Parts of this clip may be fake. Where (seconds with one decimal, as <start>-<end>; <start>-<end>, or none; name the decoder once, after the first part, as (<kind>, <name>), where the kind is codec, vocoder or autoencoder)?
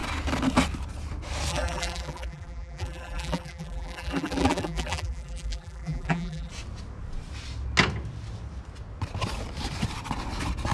1.5-6.5 (vocoder, BigVGAN v2)